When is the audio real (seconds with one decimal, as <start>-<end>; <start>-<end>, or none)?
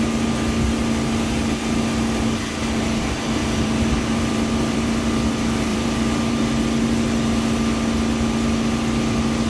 0.0-3.4; 5.0-5.7; 6.4-9.5